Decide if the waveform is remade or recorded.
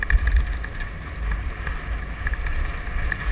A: recorded